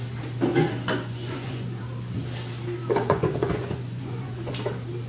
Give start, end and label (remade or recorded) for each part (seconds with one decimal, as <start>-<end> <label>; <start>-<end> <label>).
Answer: 0.0-0.5 recorded; 0.5-1.8 remade; 1.8-2.8 recorded; 2.8-4.5 remade; 4.5-5.1 recorded